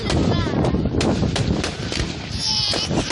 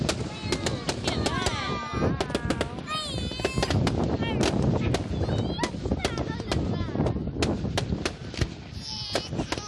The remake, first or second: first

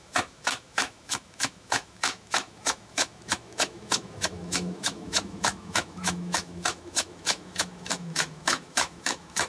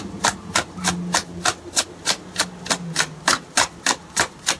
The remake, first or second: first